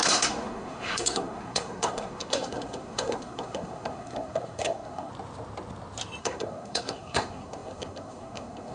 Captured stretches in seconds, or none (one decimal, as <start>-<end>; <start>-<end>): 5.1-6.2